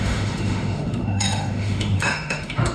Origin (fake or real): fake